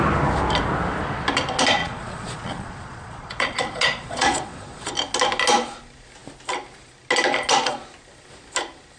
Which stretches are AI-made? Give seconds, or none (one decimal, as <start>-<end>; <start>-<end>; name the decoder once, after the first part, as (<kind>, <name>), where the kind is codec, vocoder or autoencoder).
1.8-4.9 (vocoder, Vocos)